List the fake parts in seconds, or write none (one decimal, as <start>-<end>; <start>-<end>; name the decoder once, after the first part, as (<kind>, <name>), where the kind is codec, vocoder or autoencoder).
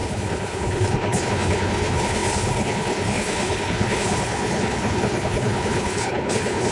0.0-6.7 (codec, HILCodec)